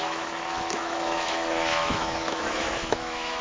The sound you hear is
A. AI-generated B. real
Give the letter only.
A